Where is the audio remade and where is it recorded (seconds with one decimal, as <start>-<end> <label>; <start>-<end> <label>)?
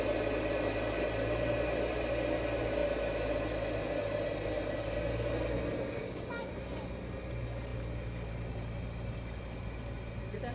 0.0-6.0 recorded; 6.0-6.5 remade; 6.5-10.5 recorded